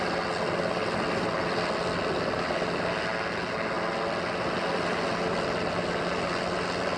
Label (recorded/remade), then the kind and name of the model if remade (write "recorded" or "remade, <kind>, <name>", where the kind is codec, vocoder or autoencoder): recorded